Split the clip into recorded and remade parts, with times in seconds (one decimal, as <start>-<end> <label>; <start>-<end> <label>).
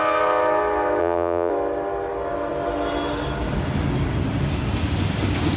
0.0-1.0 recorded; 1.0-1.5 remade; 1.5-5.6 recorded